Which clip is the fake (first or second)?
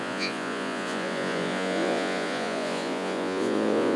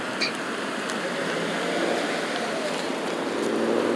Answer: first